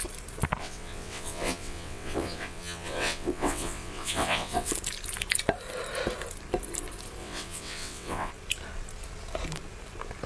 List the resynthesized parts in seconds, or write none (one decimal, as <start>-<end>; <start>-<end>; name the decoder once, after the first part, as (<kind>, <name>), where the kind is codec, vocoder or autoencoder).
0.6-4.7 (vocoder, WaveNeXt); 7.2-8.3